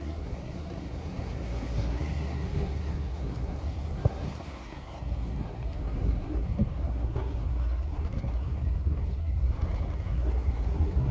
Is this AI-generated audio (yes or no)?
yes